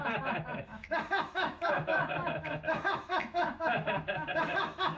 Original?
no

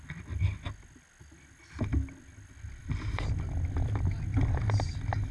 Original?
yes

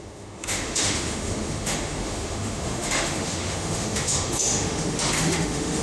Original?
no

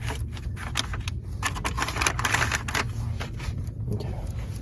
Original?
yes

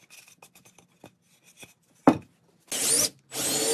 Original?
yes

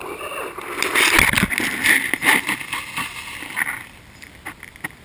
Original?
yes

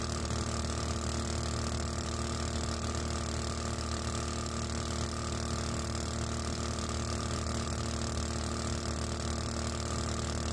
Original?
yes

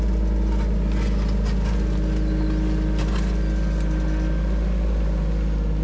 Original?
yes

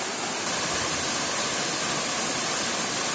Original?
yes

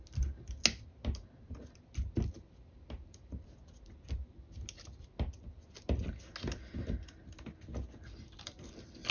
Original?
yes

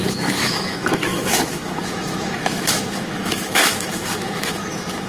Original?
no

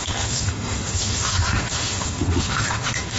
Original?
no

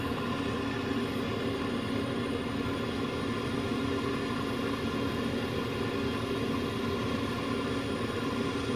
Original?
yes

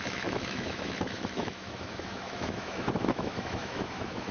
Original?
no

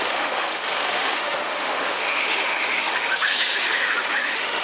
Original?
no